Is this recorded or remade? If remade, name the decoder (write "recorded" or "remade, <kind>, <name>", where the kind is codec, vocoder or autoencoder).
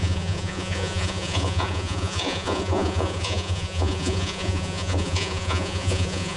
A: remade, vocoder, Vocos